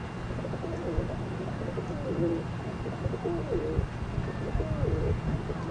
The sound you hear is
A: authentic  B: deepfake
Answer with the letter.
A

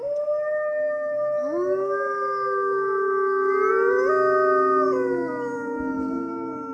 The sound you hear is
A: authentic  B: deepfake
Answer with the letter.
A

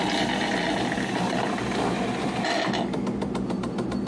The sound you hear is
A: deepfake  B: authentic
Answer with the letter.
B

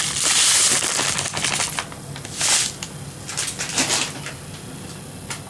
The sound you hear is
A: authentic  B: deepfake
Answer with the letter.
A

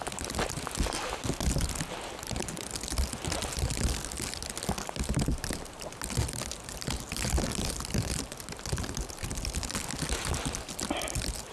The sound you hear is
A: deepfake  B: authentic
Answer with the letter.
B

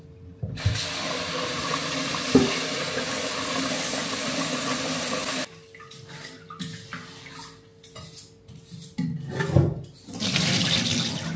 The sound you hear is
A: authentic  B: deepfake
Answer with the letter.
A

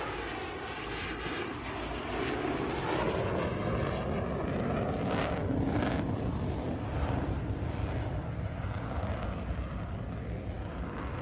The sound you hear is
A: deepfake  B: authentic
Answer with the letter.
B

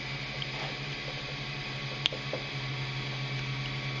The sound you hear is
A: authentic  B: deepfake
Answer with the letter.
A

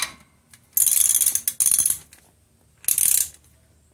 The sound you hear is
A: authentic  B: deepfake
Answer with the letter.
A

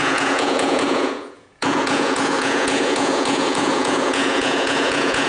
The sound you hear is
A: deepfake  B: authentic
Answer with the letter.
A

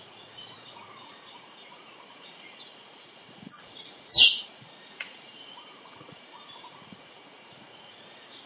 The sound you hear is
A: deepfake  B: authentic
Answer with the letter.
A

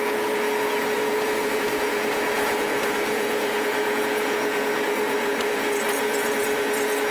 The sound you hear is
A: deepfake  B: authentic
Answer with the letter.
A